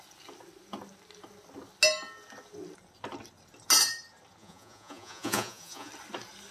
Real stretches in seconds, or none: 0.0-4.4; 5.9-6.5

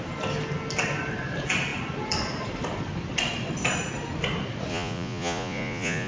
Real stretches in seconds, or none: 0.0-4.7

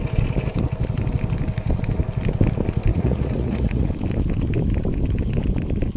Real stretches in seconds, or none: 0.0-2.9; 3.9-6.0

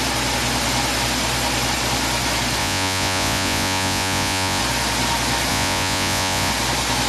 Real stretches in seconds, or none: 0.0-2.6; 4.6-5.5; 6.5-7.1